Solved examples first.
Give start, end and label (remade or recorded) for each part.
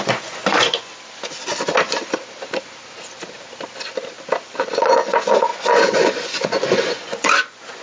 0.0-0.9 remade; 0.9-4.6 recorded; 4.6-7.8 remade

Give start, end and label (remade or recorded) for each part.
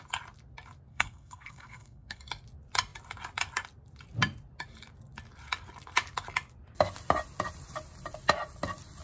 0.0-0.9 recorded; 0.9-2.2 remade; 2.2-9.0 recorded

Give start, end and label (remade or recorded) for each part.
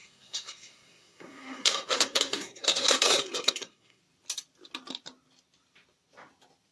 0.0-4.0 remade; 4.0-6.7 recorded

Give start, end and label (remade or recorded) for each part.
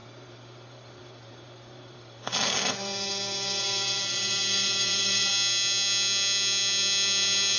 0.0-5.3 remade; 5.3-7.6 recorded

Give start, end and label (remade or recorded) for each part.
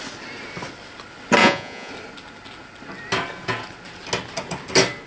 0.0-1.4 recorded; 1.4-1.9 remade; 1.9-5.1 recorded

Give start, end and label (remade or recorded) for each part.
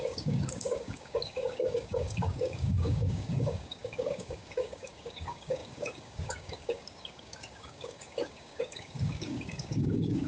0.0-10.3 remade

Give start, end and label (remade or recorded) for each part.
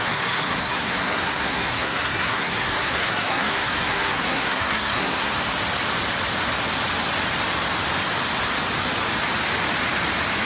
0.0-5.3 remade; 5.3-10.5 recorded